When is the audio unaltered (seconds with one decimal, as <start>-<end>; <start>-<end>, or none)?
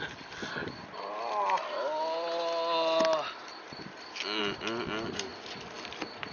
0.0-6.3